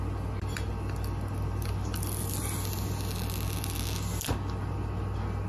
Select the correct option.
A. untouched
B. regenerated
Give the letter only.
A